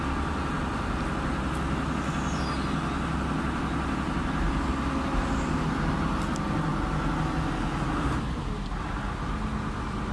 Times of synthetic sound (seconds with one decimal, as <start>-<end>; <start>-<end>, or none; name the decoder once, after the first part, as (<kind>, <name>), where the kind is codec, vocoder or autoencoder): none